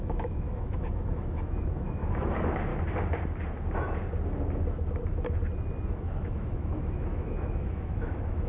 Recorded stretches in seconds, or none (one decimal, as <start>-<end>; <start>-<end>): 2.7-5.9